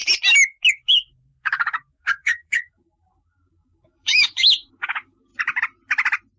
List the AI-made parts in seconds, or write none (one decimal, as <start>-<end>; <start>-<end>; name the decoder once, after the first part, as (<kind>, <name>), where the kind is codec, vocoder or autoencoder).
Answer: 0.7-5.3 (codec, DAC)